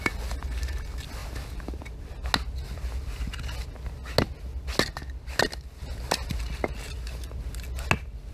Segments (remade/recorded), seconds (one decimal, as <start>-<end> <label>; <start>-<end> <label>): 0.0-1.2 recorded; 1.2-1.8 remade; 1.8-8.3 recorded